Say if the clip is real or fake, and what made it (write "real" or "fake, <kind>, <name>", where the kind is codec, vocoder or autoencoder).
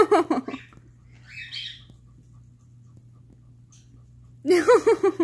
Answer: real